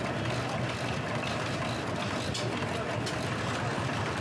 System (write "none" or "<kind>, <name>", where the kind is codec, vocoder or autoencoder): none